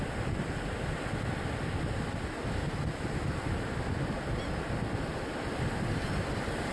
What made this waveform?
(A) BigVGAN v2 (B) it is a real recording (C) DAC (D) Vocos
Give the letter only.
B